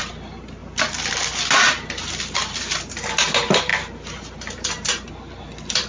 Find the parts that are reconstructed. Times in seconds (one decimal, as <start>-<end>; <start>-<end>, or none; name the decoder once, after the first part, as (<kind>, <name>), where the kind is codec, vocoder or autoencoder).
none